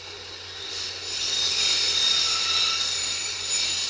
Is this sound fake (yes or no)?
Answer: no